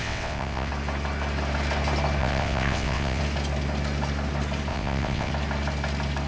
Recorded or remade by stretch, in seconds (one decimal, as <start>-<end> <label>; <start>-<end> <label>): 0.0-0.7 remade; 0.7-2.2 recorded; 2.2-3.2 remade; 3.2-4.7 recorded; 4.7-5.3 remade; 5.3-6.3 recorded